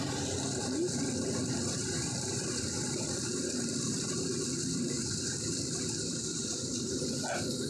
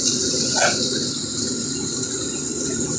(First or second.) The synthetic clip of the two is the first